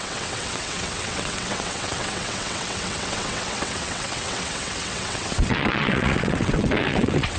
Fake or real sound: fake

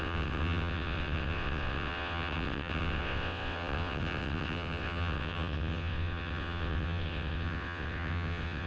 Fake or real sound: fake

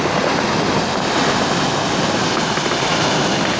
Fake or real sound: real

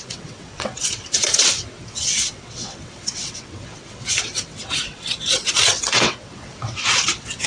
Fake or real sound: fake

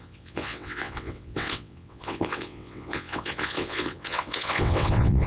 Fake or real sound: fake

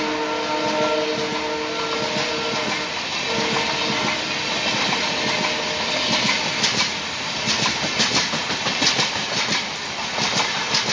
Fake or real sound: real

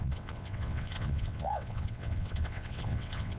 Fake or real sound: fake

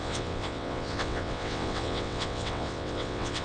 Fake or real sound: fake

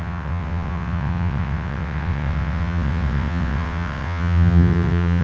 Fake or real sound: fake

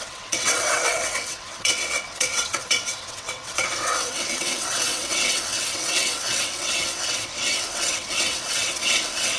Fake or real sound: fake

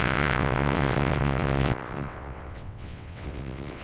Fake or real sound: fake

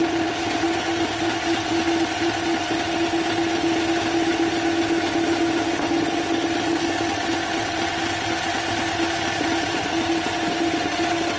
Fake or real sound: real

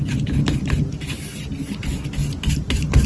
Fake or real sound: real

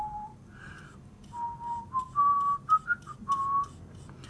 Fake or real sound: real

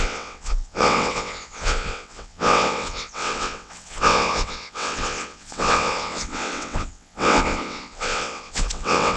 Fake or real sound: fake